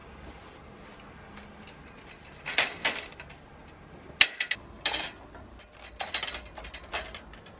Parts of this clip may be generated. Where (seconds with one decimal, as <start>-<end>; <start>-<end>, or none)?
none